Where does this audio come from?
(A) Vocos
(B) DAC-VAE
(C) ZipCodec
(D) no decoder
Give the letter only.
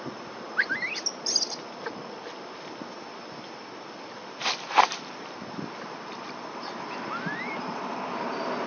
D